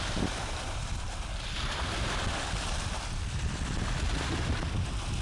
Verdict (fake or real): real